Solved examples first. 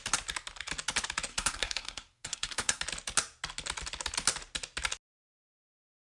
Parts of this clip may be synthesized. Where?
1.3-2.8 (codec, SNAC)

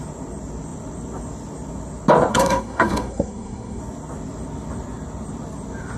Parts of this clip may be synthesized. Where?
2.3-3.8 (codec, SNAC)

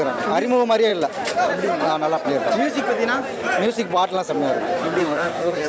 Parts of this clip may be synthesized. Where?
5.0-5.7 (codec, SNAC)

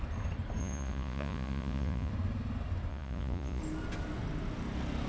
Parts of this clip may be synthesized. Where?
0.6-2.1 (vocoder, Vocos); 2.9-3.6

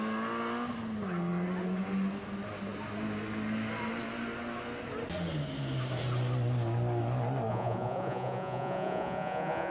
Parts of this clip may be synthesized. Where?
7.5-9.7 (vocoder, Vocos)

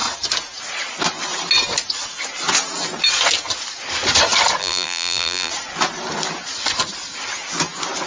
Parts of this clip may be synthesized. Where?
4.6-5.5 (vocoder, BigVGAN v2)